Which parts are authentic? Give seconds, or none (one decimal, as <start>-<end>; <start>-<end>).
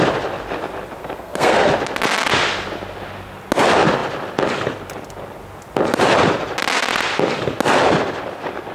0.0-1.0; 1.7-8.7